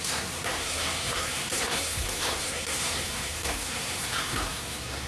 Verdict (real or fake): fake